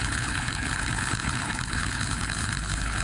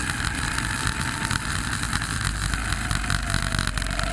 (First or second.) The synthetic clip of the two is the first